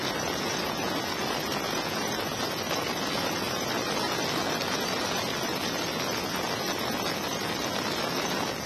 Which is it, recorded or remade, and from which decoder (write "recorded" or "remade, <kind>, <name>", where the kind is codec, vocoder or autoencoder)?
recorded